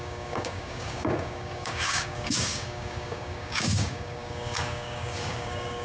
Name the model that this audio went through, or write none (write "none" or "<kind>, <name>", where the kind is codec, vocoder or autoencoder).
codec, DAC